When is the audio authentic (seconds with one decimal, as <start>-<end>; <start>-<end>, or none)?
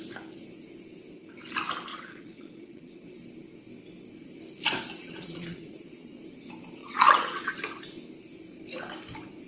0.0-1.9; 2.9-5.0; 6.2-6.8; 7.5-9.5